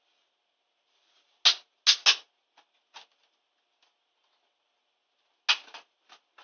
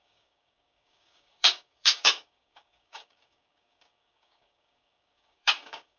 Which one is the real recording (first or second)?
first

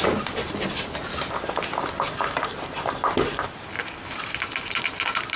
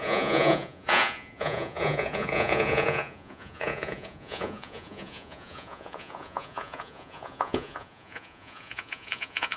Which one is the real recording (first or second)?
first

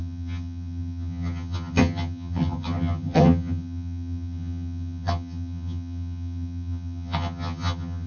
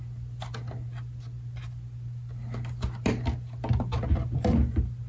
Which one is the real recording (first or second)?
second